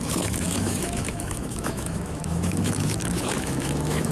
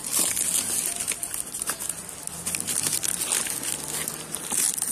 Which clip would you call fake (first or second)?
first